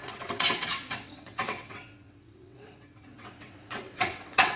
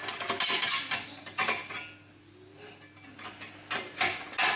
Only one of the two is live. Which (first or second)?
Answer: second